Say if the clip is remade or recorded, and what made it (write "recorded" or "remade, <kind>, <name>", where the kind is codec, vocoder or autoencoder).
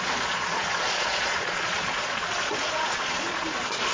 remade, vocoder, Vocos